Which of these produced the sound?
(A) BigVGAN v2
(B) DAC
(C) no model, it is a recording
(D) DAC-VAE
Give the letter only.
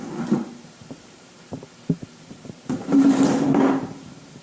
A